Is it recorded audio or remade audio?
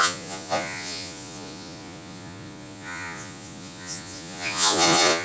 remade